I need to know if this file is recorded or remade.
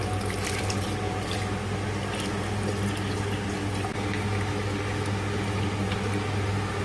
recorded